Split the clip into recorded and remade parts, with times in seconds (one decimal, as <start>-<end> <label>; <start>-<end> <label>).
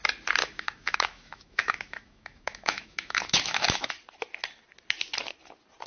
0.0-0.4 recorded; 0.4-3.9 remade; 3.9-5.9 recorded